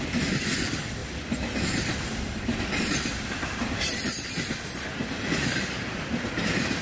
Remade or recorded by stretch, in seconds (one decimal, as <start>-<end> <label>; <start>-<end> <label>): 0.0-6.8 recorded